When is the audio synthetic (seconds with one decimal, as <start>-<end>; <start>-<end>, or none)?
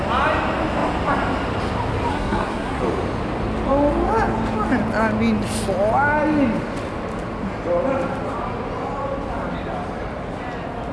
2.1-2.8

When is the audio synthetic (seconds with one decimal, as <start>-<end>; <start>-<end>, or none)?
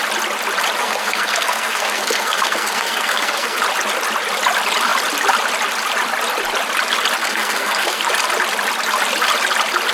0.8-3.6; 7.2-8.0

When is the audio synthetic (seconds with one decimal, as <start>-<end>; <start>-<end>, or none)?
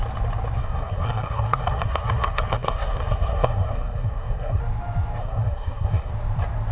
0.6-4.6; 5.2-6.1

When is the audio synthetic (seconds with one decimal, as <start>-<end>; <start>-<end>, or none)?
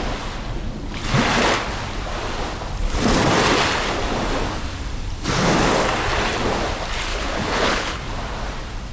7.1-8.0